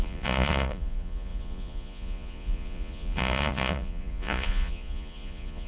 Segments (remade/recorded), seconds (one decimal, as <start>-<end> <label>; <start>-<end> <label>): 0.0-5.7 remade